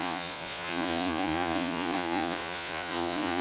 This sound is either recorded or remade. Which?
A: remade